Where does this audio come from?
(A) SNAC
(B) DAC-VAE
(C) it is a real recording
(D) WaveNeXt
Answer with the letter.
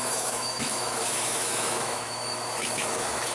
B